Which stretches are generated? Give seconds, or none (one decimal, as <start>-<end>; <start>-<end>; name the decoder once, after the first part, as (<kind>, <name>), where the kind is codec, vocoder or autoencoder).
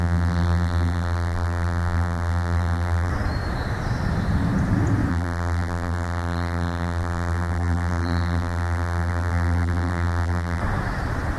0.0-3.1 (vocoder, BigVGAN v2); 5.1-10.6